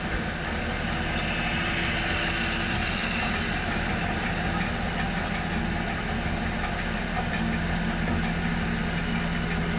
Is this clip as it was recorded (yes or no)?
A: yes